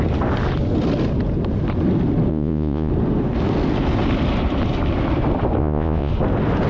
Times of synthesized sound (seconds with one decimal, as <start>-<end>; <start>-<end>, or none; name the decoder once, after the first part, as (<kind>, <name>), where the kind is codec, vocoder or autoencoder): 2.3-2.9 (vocoder, Vocos); 5.6-6.1